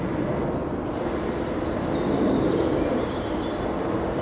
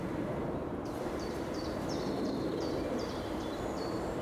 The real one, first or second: first